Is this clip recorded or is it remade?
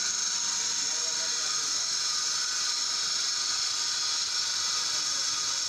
recorded